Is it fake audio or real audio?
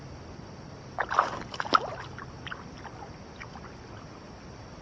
real